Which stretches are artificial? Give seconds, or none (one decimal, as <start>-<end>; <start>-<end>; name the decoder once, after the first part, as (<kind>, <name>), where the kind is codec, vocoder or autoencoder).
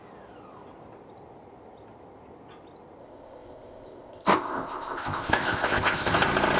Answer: 3.0-6.1 (codec, ZipCodec)